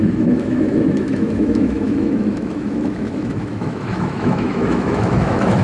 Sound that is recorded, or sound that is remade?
remade